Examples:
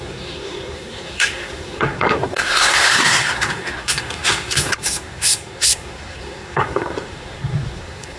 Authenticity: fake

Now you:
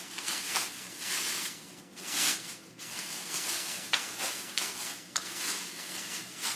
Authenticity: fake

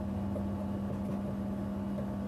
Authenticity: real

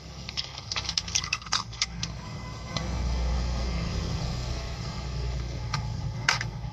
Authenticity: fake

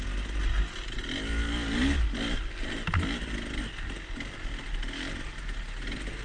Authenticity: real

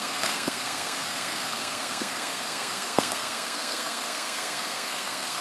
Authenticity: fake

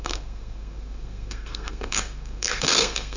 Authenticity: fake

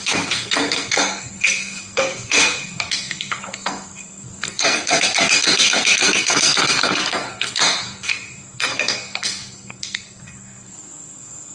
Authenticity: fake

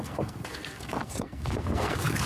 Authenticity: fake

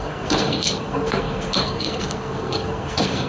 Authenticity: fake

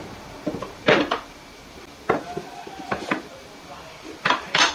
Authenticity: real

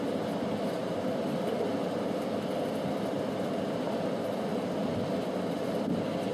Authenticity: real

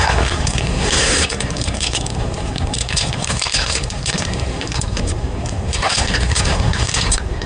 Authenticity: fake